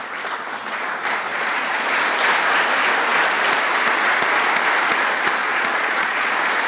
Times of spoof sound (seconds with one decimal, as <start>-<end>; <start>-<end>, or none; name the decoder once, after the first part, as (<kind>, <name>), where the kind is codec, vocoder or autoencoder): 1.3-1.9 (vocoder, Vocos); 5.4-6.3